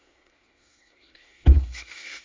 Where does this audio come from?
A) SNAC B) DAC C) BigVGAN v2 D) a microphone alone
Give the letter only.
A